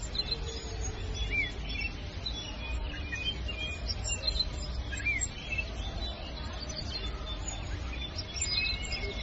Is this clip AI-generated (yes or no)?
no